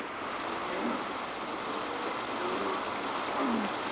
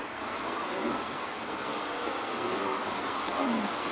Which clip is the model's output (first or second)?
second